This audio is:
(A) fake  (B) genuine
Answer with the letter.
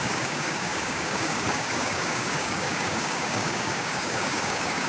A